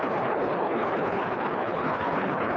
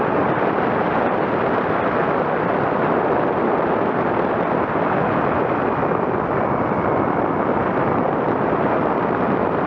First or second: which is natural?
second